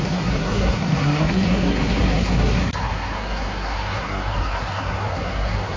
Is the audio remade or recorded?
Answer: remade